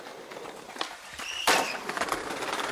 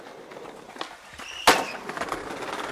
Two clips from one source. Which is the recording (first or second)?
second